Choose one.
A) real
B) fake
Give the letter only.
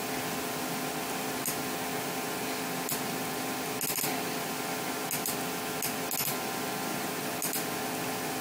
A